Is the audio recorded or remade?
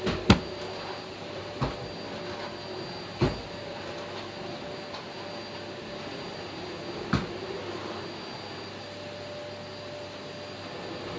recorded